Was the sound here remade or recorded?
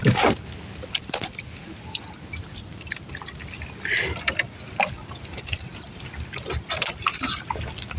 recorded